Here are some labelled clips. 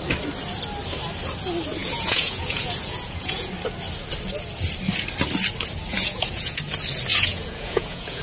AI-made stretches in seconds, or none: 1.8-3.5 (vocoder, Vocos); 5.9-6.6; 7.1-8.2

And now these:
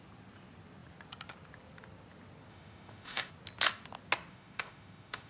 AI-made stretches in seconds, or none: 2.5-3.3 (autoencoder, DAC-VAE); 4.3-5.3

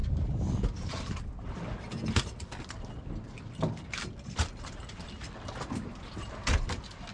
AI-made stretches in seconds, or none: none

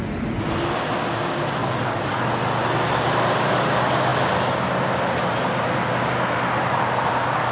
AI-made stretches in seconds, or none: 1.6-2.3 (codec, DAC)